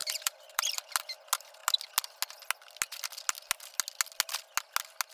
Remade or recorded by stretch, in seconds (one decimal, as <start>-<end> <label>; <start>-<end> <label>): 0.0-0.8 remade; 0.8-5.1 recorded